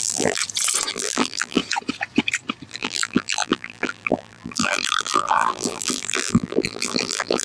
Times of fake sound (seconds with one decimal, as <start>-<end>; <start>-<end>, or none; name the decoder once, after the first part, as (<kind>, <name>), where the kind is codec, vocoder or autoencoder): 0.0-0.4 (vocoder, BigVGAN v2); 0.9-1.6; 2.7-7.4